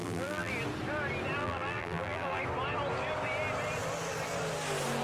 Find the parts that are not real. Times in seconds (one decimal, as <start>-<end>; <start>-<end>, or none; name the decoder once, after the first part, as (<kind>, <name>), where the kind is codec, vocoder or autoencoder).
0.0-0.5 (vocoder, BigVGAN v2); 1.4-2.4